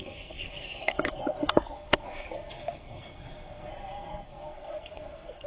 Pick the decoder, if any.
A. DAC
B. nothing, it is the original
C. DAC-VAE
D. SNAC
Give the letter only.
D